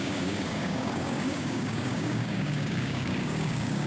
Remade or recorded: remade